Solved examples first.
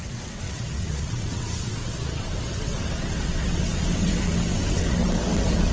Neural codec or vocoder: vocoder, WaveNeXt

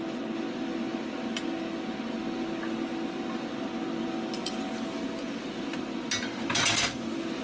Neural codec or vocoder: none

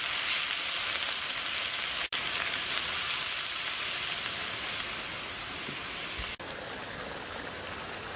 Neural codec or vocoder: none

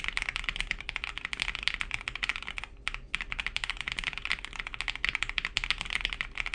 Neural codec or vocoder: none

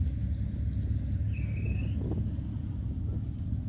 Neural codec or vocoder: none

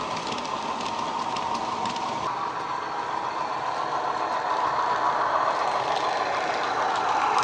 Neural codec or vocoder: none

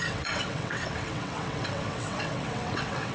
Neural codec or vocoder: vocoder, WaveNeXt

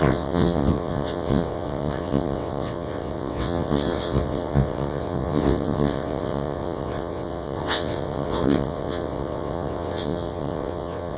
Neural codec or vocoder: vocoder, WaveNeXt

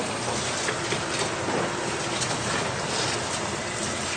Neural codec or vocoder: none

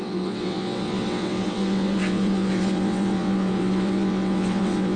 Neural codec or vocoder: vocoder, WaveNeXt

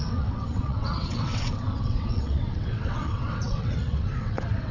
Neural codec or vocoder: vocoder, WaveNeXt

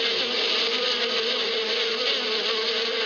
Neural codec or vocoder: none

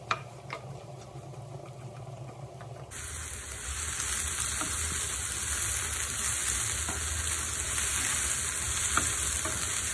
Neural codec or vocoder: none